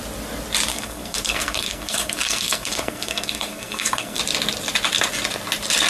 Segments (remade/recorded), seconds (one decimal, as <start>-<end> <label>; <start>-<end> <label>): 0.0-0.7 recorded; 0.7-4.2 remade; 4.2-5.9 recorded